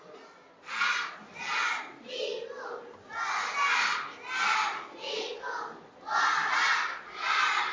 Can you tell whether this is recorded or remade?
recorded